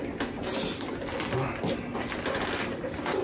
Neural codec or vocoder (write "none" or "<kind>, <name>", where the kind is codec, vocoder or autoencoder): none